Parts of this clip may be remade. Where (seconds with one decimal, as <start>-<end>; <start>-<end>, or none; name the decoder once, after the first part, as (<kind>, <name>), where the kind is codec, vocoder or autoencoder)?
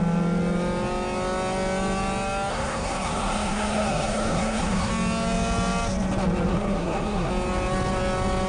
2.5-4.9 (codec, SNAC); 6.5-7.3